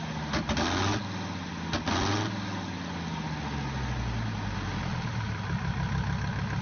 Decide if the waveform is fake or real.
real